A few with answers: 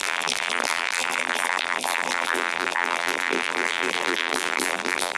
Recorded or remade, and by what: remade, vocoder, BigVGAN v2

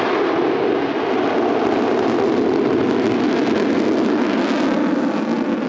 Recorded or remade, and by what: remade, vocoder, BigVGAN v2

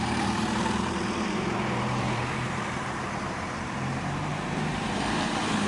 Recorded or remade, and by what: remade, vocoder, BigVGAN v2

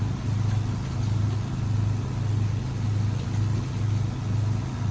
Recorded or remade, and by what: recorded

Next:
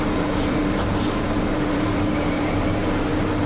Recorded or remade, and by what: remade, vocoder, BigVGAN v2